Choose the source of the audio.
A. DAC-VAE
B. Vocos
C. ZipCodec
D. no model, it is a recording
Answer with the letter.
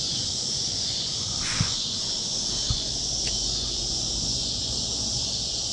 B